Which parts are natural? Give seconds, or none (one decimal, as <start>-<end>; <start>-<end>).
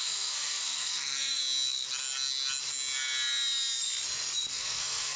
1.4-4.5